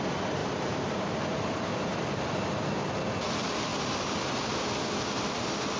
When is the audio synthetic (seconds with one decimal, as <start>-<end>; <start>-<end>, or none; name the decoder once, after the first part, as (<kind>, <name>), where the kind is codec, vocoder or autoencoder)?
0.4-2.0 (vocoder, BigVGAN v2)